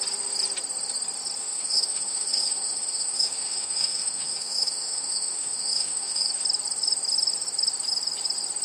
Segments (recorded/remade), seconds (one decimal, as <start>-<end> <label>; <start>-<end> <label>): 0.0-1.4 recorded; 1.4-6.3 remade; 6.3-8.6 recorded